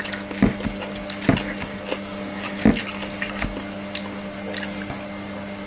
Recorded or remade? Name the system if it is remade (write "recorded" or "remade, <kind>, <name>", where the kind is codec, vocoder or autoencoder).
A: recorded